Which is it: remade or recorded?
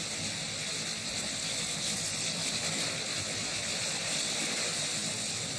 recorded